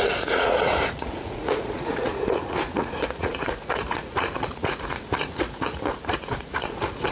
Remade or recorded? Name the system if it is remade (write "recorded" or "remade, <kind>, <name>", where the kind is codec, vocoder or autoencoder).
remade, vocoder, Vocos